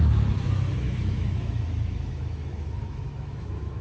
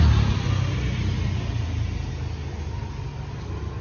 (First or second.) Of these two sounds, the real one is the second